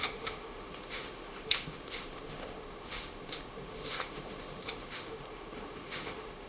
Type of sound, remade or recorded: remade